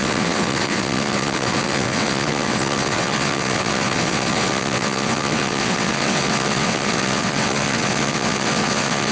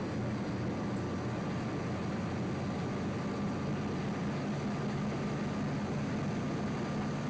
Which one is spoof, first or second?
first